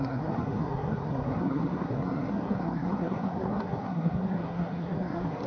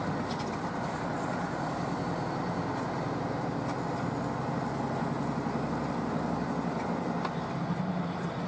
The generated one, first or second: first